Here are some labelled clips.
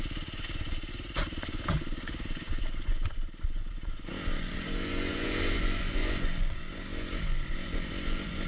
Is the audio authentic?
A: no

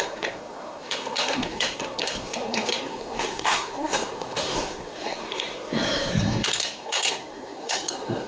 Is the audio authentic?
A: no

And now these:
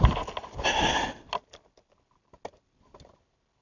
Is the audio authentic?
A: yes